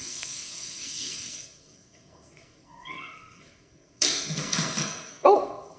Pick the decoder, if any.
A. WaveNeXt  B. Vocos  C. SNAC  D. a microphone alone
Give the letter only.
C